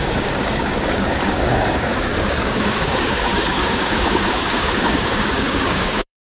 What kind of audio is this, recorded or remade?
remade